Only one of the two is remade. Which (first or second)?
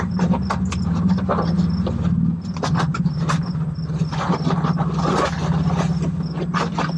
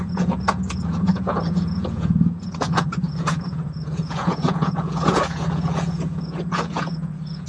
second